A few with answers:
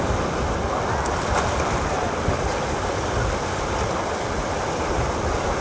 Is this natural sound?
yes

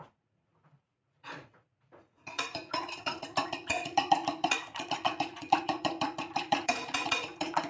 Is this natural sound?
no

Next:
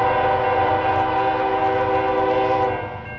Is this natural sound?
yes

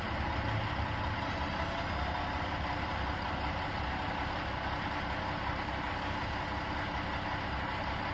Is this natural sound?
yes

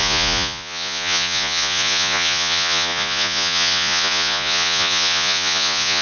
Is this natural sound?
no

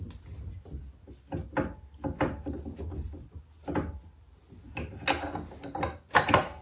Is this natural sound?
yes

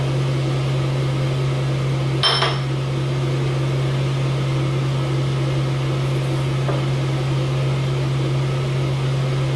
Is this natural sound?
yes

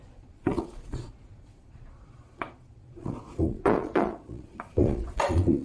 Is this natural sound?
no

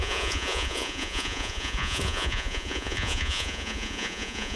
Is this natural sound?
no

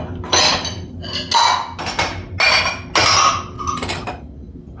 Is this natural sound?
yes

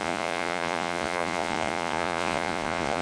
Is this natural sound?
no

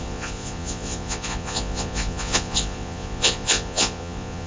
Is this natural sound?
no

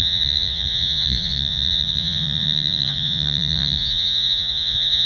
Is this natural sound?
no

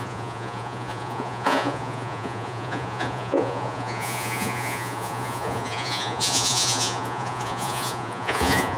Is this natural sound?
no